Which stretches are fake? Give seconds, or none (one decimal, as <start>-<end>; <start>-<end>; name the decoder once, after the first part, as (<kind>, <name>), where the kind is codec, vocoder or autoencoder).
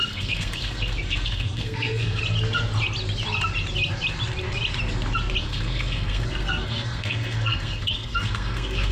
0.0-2.2 (codec, SNAC); 5.4-8.9